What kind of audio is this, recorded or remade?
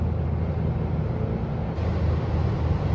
recorded